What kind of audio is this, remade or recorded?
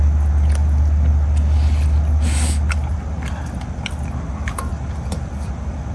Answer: recorded